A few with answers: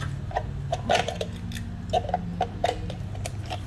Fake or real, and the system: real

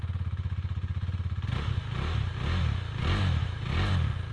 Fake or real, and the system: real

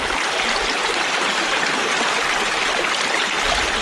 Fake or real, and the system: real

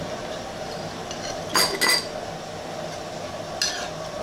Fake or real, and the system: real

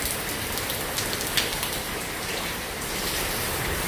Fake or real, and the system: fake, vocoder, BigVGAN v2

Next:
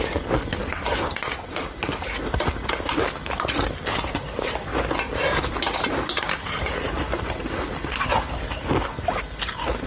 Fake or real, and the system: real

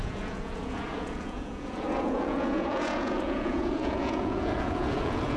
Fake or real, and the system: fake, vocoder, Vocos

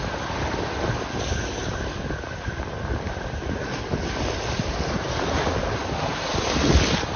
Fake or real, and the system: real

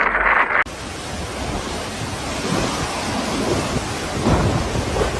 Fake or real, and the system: real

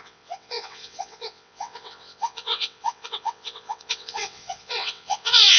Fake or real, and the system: fake, vocoder, WaveNeXt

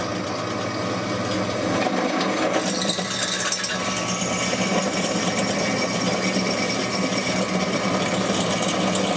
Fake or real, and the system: real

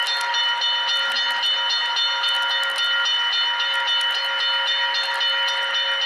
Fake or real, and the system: real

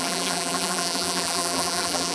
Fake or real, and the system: fake, vocoder, BigVGAN v2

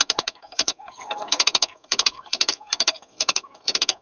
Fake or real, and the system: fake, codec, SNAC